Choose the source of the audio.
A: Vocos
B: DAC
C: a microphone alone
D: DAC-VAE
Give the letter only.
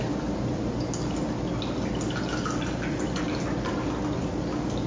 C